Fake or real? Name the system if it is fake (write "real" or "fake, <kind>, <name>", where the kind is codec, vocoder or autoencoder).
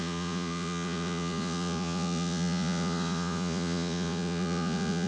fake, vocoder, Vocos